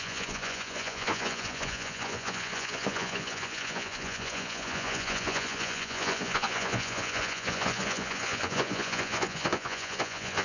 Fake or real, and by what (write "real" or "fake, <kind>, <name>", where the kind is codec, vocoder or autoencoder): fake, vocoder, Vocos